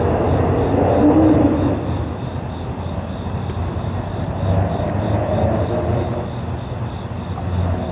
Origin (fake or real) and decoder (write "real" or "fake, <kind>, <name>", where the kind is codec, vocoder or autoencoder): real